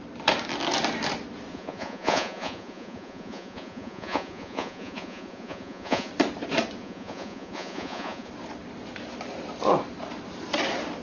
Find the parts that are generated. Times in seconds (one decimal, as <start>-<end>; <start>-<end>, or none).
1.5-6.1; 6.8-8.3